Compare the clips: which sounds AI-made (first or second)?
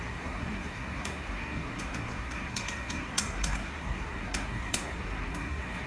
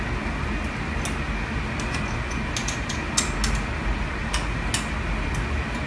first